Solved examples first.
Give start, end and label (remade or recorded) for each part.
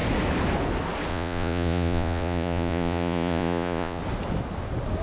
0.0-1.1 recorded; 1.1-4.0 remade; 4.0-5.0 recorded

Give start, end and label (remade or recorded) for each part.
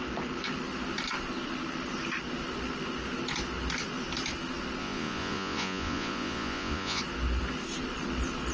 0.0-4.8 recorded; 4.8-7.0 remade; 7.0-8.5 recorded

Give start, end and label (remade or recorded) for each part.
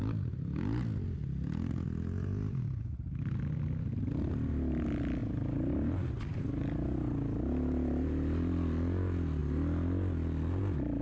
0.0-11.0 recorded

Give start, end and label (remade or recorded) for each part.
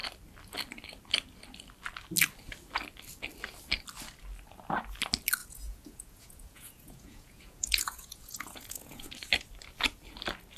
0.0-5.4 recorded; 5.4-9.1 remade; 9.1-10.6 recorded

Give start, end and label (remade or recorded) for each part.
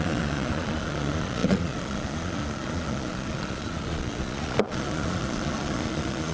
0.0-6.3 remade